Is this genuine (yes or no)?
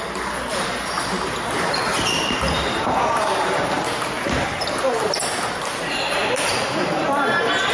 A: no